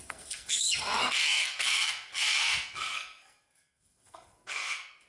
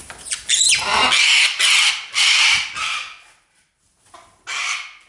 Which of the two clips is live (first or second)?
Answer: second